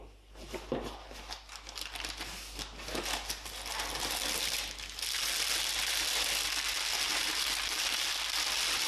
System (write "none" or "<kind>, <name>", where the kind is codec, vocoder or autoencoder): none